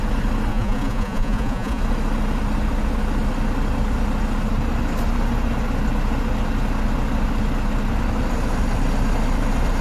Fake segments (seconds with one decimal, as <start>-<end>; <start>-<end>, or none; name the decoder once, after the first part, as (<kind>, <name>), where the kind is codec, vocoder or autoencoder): 0.5-1.8 (vocoder, Vocos)